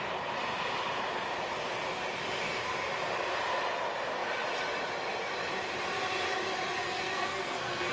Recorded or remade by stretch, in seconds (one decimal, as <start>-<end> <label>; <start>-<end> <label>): 0.0-6.8 recorded; 6.8-7.9 remade